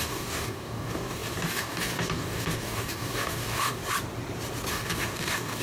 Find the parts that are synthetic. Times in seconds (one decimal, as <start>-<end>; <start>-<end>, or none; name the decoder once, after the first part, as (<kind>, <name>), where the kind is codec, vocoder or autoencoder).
0.0-3.8 (codec, DAC); 4.7-5.6